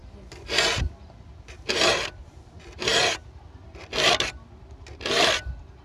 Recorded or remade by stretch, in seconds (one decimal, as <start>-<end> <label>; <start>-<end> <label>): 0.0-5.8 recorded